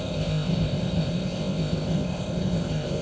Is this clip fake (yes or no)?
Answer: yes